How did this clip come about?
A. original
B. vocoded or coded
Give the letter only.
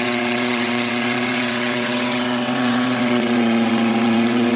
B